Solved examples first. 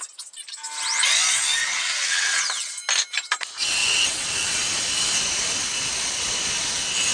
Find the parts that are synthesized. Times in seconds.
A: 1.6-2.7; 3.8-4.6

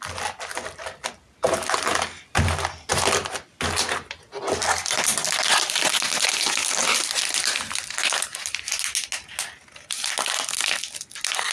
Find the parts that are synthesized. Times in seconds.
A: none

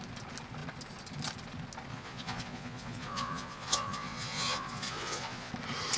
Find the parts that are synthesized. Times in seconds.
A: 1.9-5.5

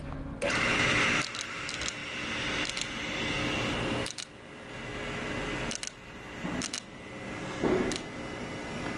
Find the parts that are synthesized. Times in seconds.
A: none

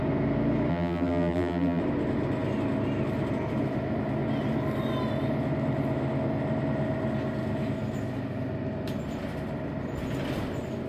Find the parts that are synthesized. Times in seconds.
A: 0.7-1.8